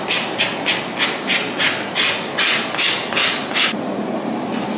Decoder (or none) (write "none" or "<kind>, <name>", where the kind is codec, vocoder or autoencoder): none